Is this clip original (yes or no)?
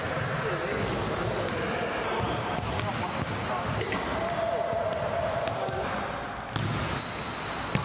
yes